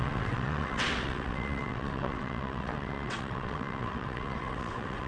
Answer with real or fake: fake